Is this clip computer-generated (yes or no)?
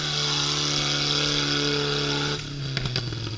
no